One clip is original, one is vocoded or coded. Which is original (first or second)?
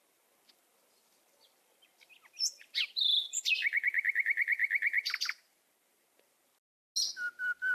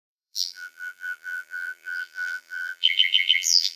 first